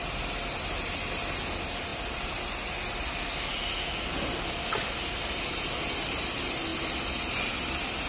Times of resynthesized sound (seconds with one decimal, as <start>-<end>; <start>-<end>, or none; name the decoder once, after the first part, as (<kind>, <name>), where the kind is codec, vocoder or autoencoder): none